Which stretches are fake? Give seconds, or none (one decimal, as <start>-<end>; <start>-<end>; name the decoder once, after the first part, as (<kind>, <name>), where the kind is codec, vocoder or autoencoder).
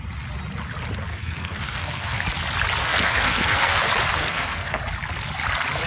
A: 1.1-2.2 (codec, SNAC); 2.8-3.8; 4.2-4.8